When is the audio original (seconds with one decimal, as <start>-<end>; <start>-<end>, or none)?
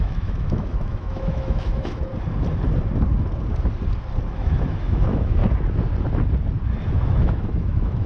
2.1-4.3; 5.4-6.9